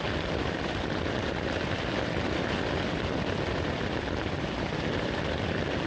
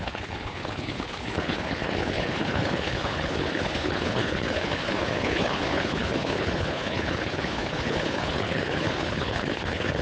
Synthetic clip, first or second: second